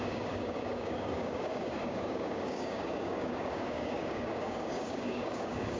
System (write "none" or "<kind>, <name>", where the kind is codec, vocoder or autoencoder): codec, DAC